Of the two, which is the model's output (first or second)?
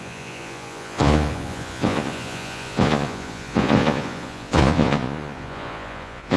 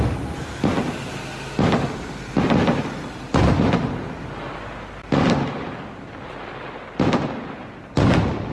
first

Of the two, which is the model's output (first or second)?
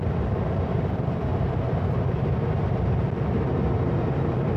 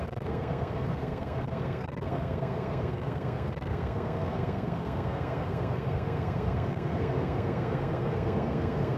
second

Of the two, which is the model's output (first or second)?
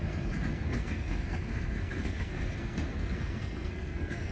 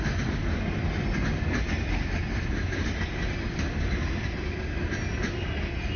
first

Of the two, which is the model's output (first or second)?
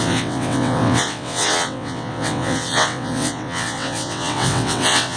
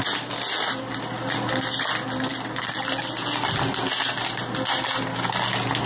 first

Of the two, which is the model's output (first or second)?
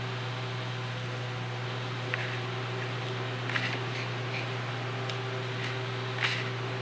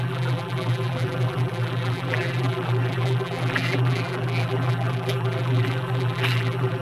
second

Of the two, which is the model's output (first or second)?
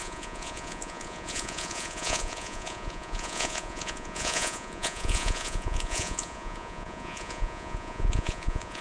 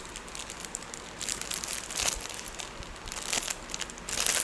first